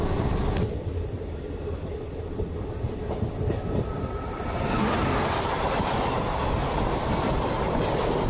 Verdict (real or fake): real